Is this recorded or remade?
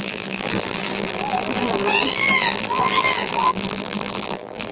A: remade